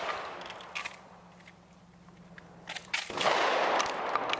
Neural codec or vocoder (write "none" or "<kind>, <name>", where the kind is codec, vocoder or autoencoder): none